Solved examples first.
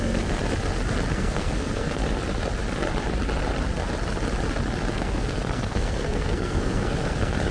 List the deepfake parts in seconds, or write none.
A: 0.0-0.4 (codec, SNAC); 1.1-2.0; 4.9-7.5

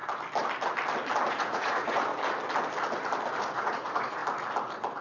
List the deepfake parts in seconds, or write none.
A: 1.3-2.1 (vocoder, Vocos); 3.4-4.2

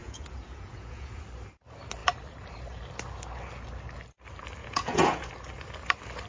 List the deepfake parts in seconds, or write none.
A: 0.0-1.2 (vocoder, Vocos); 4.6-5.3